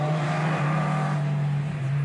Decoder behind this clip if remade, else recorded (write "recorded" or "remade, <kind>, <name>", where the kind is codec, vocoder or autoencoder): recorded